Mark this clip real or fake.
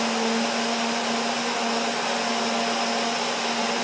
real